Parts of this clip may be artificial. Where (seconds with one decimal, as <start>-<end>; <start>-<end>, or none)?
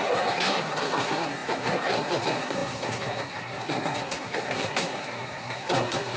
0.0-6.2